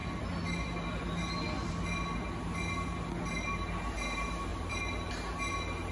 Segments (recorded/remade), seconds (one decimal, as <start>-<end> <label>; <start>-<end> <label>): 0.0-4.5 recorded; 4.5-5.1 remade; 5.1-5.9 recorded